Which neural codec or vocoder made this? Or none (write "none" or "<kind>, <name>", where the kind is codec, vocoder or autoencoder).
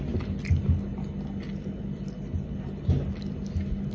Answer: none